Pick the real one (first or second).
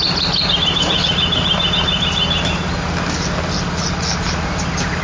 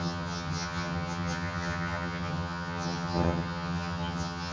first